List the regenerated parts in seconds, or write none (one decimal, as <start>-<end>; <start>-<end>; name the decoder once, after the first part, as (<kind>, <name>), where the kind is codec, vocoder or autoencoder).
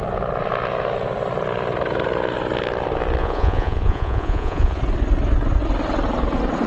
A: 3.2-4.8 (vocoder, Vocos)